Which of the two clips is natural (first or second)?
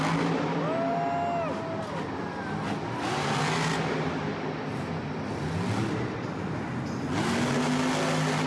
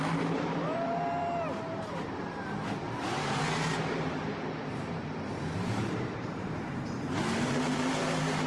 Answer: first